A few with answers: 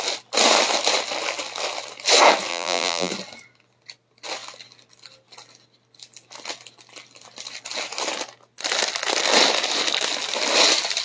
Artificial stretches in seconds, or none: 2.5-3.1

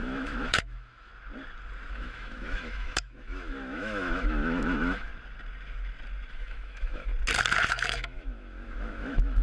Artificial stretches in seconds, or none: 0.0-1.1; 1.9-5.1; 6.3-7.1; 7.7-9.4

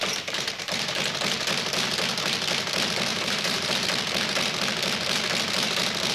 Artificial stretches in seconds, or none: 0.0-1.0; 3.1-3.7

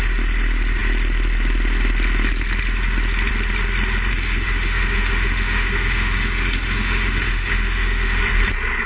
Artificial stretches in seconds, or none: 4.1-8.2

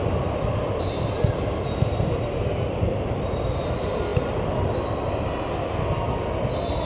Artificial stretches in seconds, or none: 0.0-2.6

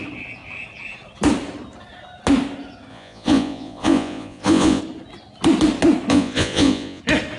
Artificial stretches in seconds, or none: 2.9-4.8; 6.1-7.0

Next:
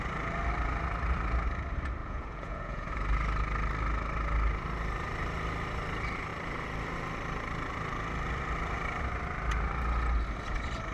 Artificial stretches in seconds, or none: 2.0-2.9